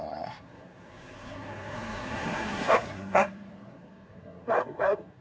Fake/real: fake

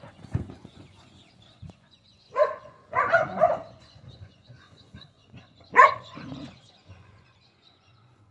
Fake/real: fake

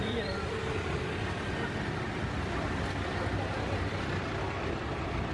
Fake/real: fake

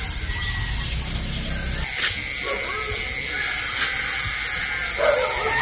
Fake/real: real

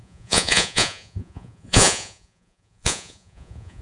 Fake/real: fake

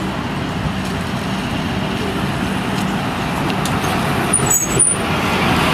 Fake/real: real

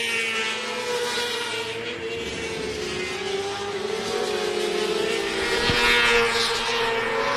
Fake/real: real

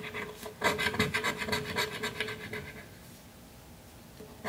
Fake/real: real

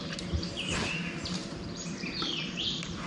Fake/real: fake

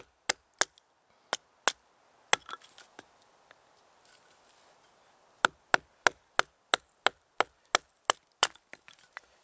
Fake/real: real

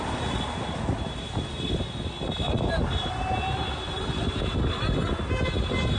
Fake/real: real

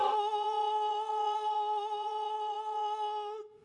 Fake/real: fake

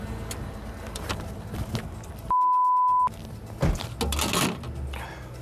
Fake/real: real